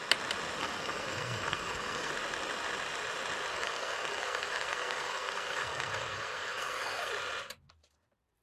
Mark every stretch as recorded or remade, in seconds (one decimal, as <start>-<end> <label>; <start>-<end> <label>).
0.0-0.6 recorded; 0.6-2.1 remade; 2.1-3.5 recorded; 3.5-7.1 remade; 7.1-8.4 recorded